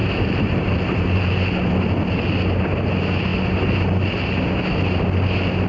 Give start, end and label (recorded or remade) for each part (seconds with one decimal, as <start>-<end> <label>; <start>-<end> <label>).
0.0-1.3 remade; 1.3-5.7 recorded